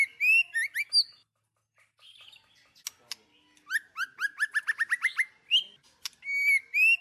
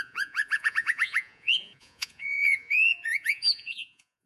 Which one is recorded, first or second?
first